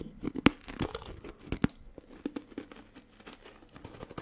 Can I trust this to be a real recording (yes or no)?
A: yes